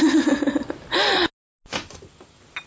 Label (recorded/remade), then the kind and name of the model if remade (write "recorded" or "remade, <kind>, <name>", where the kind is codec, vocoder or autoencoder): recorded